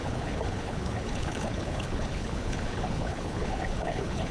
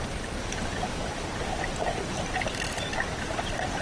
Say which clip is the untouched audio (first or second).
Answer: second